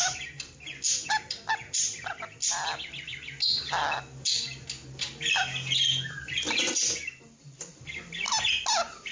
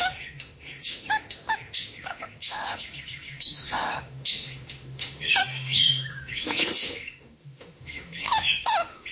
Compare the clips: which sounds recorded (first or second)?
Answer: first